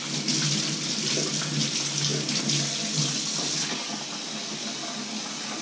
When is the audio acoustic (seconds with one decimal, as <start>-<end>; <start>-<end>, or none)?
0.0-5.6